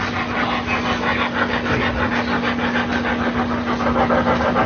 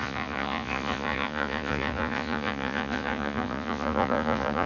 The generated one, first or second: second